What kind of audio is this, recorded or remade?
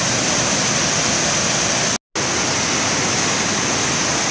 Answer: recorded